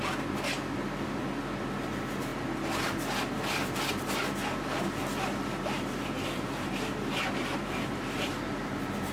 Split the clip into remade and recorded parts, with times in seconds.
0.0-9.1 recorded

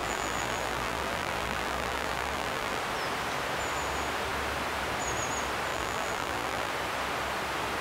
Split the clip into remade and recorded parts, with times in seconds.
0.0-2.8 remade; 2.8-5.7 recorded; 5.7-6.7 remade; 6.7-7.8 recorded

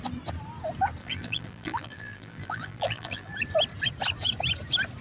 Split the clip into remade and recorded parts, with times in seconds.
0.0-1.0 recorded; 1.0-3.3 remade; 3.3-5.0 recorded

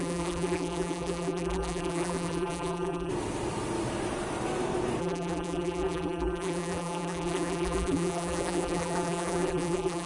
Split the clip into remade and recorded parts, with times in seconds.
0.0-3.1 remade; 3.1-5.0 recorded; 5.0-10.1 remade

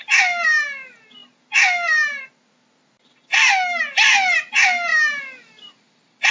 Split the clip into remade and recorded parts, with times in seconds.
0.0-6.3 recorded

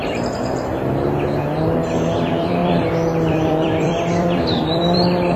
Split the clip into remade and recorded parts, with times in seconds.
0.0-5.4 remade

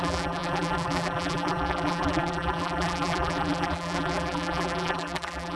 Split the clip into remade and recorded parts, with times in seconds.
0.0-5.6 remade